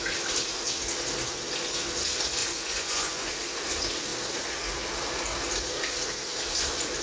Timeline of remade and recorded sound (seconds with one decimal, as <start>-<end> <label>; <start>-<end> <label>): 0.0-2.4 recorded; 2.4-3.3 remade; 3.3-7.0 recorded